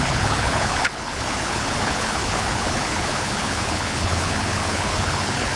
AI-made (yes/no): yes